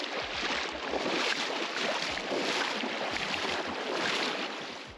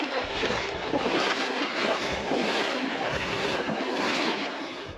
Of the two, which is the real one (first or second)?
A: first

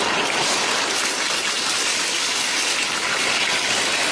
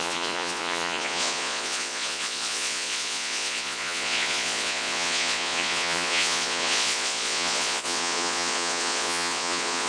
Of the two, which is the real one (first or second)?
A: first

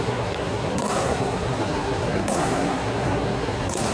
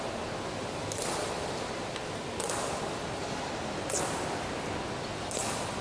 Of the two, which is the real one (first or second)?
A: second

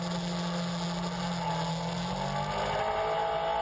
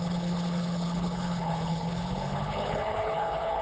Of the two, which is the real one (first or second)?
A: first